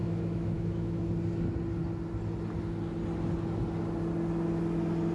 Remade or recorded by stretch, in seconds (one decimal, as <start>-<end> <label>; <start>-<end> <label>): 0.0-1.0 remade; 1.0-5.1 recorded